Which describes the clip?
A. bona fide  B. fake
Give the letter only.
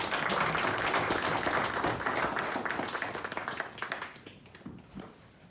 A